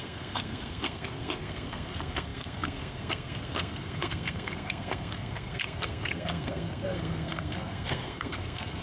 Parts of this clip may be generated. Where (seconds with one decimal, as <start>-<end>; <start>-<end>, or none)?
0.0-8.8